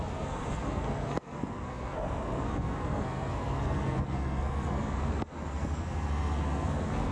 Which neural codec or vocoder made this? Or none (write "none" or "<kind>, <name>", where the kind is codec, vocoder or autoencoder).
codec, SNAC